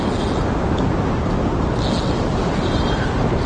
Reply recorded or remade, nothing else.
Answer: recorded